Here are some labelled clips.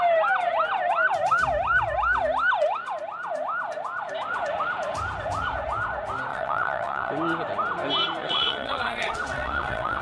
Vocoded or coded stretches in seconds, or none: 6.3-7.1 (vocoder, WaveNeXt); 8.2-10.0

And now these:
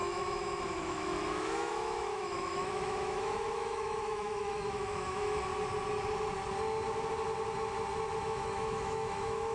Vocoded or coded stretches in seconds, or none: 0.0-5.5 (autoencoder, DAC-VAE); 8.2-9.5

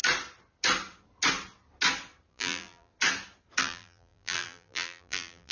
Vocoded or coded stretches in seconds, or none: 2.3-2.9 (vocoder, BigVGAN v2); 3.6-5.5

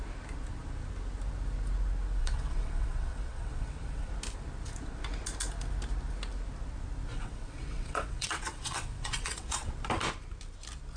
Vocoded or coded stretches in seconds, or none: 2.2-4.1 (vocoder, WaveNeXt); 7.1-9.7

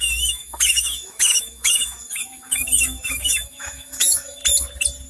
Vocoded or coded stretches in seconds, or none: 0.0-4.4 (autoencoder, DAC-VAE)

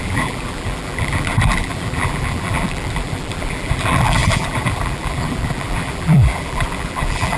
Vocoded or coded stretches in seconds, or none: 0.0-7.4 (vocoder, BigVGAN v2)